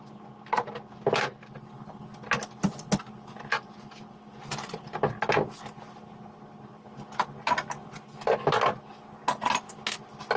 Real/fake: real